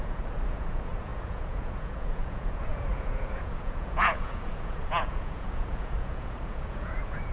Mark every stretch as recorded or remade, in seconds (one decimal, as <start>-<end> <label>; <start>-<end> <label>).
0.0-7.3 remade